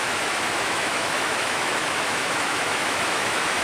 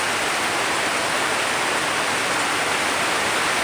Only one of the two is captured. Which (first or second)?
second